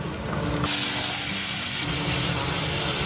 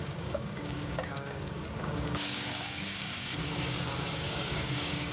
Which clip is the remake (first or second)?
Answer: second